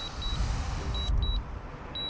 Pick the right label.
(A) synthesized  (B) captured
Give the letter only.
B